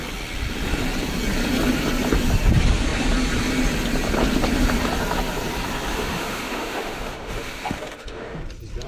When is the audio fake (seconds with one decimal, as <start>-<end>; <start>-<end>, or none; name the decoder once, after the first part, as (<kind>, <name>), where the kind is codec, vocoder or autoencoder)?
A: 5.9-8.4 (autoencoder, DAC-VAE)